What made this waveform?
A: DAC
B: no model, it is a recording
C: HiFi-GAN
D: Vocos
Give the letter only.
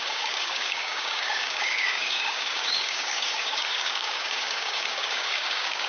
A